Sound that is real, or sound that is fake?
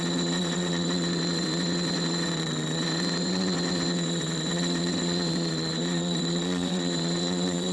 fake